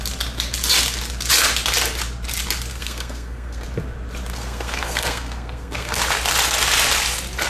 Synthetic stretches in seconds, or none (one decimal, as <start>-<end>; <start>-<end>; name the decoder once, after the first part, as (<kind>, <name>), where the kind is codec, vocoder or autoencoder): 2.7-3.6 (codec, SNAC); 4.3-6.0